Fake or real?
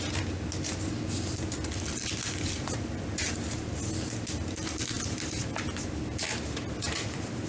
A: real